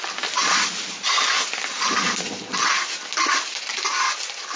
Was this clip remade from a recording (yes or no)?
no